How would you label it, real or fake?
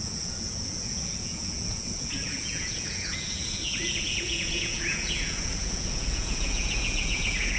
fake